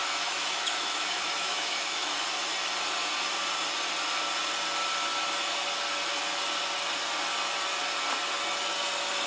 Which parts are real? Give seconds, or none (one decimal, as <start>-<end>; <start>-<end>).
2.2-9.3